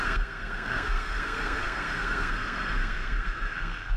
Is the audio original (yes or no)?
no